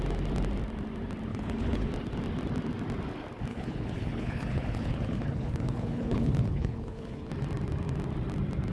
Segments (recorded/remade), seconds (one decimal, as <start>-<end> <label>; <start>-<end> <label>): 0.0-1.3 recorded; 1.3-1.9 remade; 1.9-3.5 recorded; 3.5-7.3 remade; 7.3-8.7 recorded